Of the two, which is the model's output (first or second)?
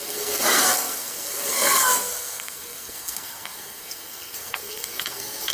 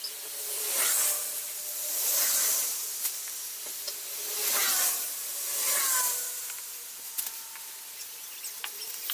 first